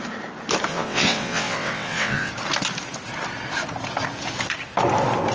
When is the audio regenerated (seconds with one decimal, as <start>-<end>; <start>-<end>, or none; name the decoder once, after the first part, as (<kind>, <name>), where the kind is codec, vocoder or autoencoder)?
0.7-2.3 (vocoder, WaveNeXt)